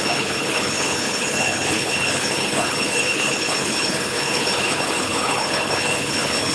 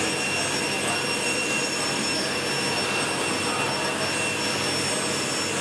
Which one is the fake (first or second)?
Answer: first